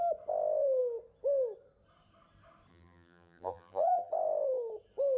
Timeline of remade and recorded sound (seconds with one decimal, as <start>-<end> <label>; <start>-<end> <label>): 0.0-2.7 recorded; 2.7-4.1 remade; 4.1-5.2 recorded